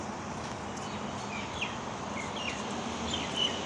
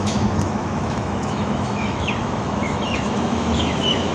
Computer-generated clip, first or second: second